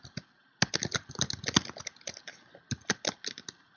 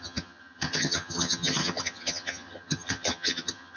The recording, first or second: first